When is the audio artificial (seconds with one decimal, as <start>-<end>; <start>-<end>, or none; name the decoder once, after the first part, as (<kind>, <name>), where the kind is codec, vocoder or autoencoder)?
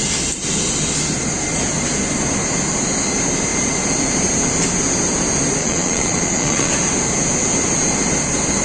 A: 5.6-6.7 (vocoder, Vocos)